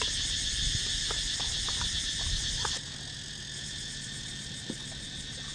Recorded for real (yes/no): yes